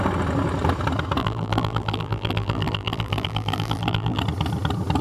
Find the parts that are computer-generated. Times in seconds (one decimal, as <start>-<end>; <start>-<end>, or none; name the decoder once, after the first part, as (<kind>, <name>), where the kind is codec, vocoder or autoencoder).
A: 1.2-4.2 (vocoder, BigVGAN v2)